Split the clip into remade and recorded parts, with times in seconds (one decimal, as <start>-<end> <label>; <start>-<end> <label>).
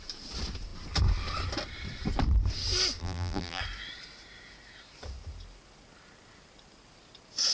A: 0.0-3.0 recorded; 3.0-3.6 remade; 3.6-7.5 recorded